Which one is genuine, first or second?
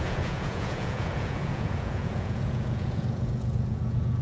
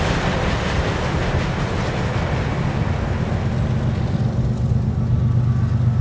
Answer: second